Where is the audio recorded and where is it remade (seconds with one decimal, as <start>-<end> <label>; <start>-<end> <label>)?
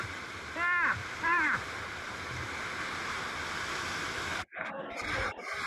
0.0-1.0 recorded; 1.0-3.1 remade; 3.1-5.7 recorded